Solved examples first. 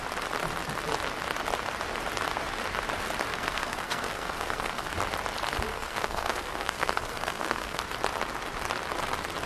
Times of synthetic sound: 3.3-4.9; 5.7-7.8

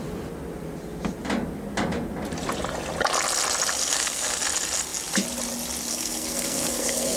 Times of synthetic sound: 3.8-4.4; 5.9-7.2

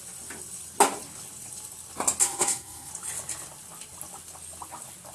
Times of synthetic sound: 2.2-2.9

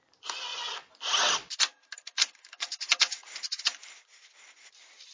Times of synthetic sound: none